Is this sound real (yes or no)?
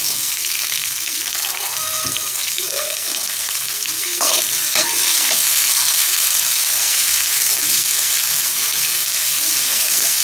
no